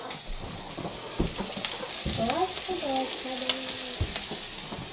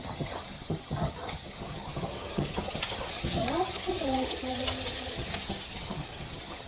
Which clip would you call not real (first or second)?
second